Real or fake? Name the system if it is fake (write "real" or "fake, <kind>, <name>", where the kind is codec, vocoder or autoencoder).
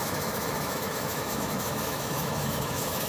fake, autoencoder, DAC-VAE